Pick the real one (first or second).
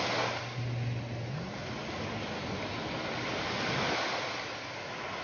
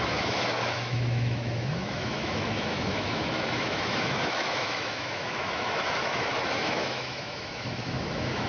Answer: first